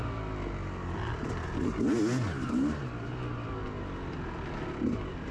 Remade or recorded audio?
recorded